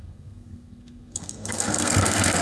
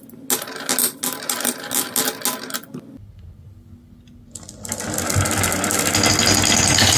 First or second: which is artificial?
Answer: first